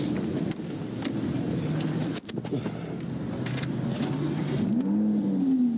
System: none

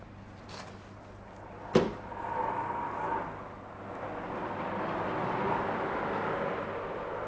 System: none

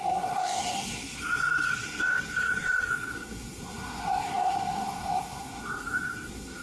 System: codec, SNAC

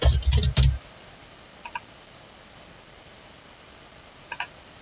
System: none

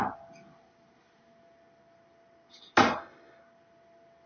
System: none